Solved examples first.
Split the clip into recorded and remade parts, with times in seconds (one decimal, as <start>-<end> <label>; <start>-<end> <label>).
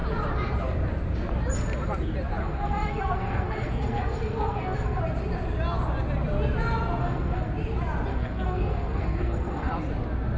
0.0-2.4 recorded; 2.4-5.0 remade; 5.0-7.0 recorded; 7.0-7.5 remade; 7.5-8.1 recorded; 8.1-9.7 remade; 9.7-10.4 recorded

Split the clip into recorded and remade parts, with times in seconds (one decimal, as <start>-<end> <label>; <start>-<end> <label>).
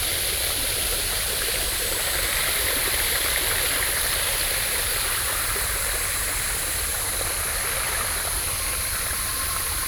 0.0-6.9 remade; 6.9-8.7 recorded; 8.7-9.9 remade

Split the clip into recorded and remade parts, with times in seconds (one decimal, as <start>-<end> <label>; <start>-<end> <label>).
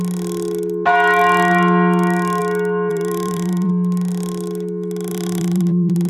0.0-2.9 recorded; 2.9-3.7 remade; 3.7-5.1 recorded; 5.1-6.1 remade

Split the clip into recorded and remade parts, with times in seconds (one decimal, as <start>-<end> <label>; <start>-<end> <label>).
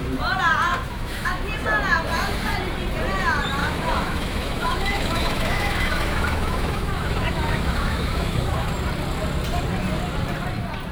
0.0-0.7 recorded; 0.7-1.4 remade; 1.4-3.6 recorded; 3.6-8.7 remade; 8.7-10.9 recorded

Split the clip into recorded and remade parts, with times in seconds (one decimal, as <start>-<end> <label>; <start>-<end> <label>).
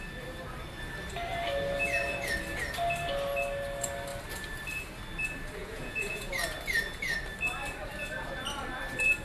0.0-5.6 recorded; 5.6-6.3 remade; 6.3-9.2 recorded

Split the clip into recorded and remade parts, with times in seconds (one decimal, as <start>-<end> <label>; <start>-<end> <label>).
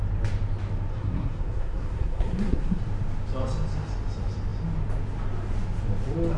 0.0-0.9 recorded; 0.9-2.8 remade; 2.8-6.4 recorded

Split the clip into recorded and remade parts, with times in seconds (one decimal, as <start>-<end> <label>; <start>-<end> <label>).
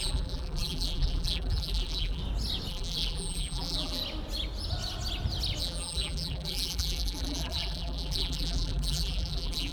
0.0-2.2 remade; 2.2-2.7 recorded; 2.7-4.0 remade; 4.0-5.6 recorded; 5.6-9.7 remade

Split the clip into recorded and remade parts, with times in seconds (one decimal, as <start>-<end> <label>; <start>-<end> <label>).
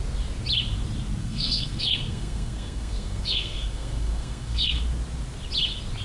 0.0-1.2 recorded; 1.2-4.8 remade; 4.8-6.0 recorded